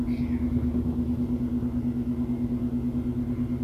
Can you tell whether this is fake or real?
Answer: real